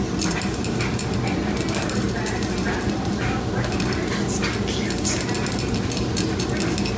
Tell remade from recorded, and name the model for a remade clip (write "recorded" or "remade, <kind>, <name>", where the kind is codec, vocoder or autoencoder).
recorded